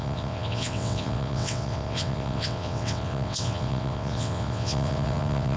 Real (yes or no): no